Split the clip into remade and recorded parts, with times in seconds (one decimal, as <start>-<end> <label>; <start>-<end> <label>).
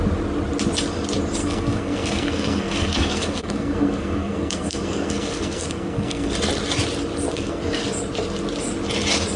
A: 0.0-1.4 recorded; 1.4-6.3 remade; 6.3-7.3 recorded; 7.3-7.8 remade; 7.8-9.4 recorded